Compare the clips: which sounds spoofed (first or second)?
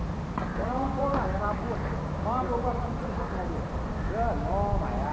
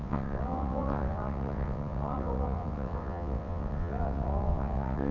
second